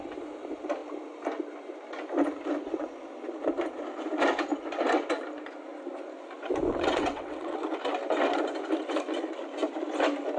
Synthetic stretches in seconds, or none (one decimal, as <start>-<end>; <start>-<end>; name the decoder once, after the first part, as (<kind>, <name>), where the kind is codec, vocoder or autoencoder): 6.7-7.6 (vocoder, WaveNeXt)

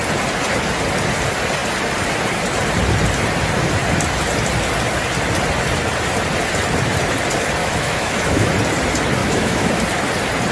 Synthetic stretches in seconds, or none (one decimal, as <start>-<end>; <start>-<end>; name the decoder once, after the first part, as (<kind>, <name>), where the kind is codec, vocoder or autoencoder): 7.6-8.5 (autoencoder, DAC-VAE); 9.2-9.8

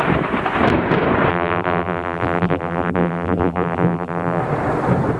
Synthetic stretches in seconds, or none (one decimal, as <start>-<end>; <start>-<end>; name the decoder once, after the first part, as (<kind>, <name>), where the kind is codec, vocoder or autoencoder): 1.3-4.4 (vocoder, BigVGAN v2)

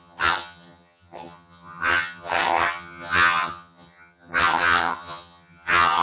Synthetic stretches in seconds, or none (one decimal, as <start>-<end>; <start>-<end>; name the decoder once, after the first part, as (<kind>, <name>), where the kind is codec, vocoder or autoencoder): 0.0-6.0 (vocoder, HiFi-GAN)